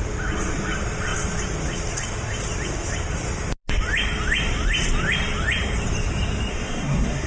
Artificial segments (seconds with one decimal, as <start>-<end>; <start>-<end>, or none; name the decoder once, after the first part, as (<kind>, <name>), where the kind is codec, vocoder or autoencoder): 6.5-7.3 (codec, SNAC)